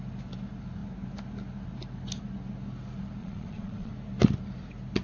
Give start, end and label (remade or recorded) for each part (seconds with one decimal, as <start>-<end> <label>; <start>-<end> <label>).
0.0-3.2 recorded; 3.2-3.9 remade; 3.9-5.0 recorded